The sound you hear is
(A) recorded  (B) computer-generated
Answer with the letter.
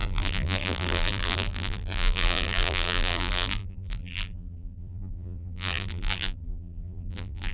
B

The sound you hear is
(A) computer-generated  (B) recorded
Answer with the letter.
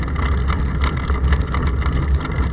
B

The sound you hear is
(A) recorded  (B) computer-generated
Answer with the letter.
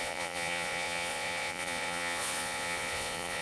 B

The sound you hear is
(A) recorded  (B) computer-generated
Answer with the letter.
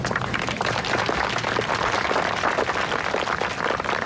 B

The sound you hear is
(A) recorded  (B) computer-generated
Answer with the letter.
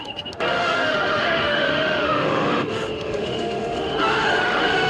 B